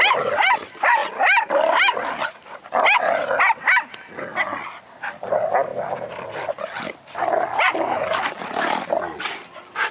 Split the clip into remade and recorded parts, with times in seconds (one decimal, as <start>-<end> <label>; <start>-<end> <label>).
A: 0.0-9.9 recorded